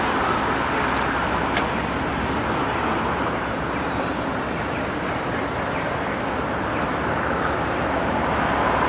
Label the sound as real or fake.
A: real